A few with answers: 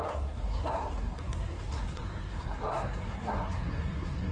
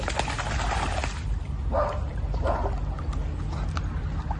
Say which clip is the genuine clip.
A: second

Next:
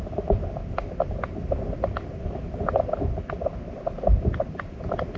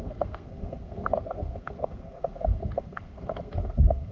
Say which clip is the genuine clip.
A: first